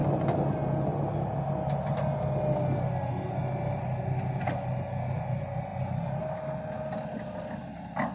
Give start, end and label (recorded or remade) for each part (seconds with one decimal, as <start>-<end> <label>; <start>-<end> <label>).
0.0-8.1 recorded